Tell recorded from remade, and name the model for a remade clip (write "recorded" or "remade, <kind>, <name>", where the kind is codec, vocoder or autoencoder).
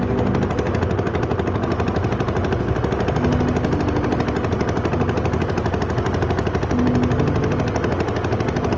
recorded